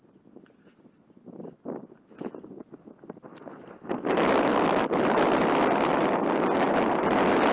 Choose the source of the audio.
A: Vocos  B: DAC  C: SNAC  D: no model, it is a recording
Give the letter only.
D